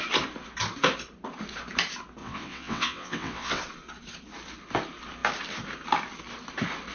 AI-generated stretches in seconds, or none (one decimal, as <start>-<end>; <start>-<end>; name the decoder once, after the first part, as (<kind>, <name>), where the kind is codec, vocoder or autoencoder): 2.2-3.6 (vocoder, WaveNeXt)